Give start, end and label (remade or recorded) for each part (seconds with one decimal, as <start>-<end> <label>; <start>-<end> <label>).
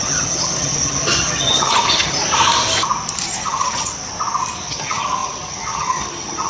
0.0-2.2 remade; 2.2-3.3 recorded; 3.3-3.9 remade; 3.9-4.7 recorded; 4.7-6.5 remade